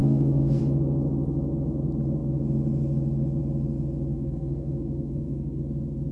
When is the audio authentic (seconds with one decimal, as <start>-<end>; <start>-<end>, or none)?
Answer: 0.6-4.1; 5.6-6.1